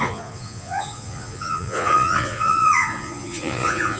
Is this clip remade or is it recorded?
remade